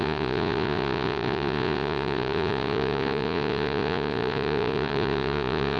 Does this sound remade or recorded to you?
remade